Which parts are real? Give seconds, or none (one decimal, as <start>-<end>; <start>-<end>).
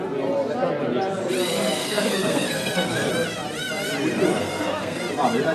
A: 0.0-1.8; 3.1-4.3; 5.0-5.5